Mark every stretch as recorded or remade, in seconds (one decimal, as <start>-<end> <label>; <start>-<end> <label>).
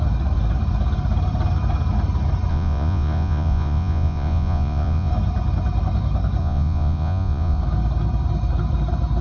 0.0-2.5 recorded; 2.5-5.1 remade; 5.1-6.4 recorded; 6.4-7.6 remade; 7.6-9.2 recorded